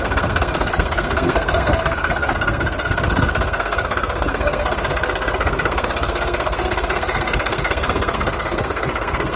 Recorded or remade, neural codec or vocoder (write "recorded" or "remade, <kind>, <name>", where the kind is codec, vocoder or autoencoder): remade, codec, SNAC